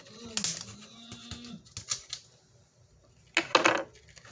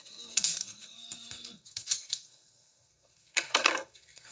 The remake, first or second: second